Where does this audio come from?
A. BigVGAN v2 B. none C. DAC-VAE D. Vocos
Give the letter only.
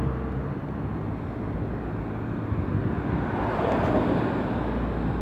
B